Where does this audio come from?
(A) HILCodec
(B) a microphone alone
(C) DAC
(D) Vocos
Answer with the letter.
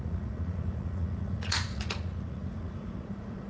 D